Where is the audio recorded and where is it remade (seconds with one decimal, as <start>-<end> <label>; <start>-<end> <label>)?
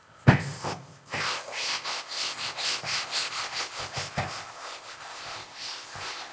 0.0-6.3 remade